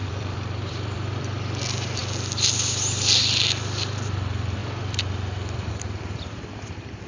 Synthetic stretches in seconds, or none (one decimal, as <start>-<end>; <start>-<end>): 0.0-1.6; 4.6-5.7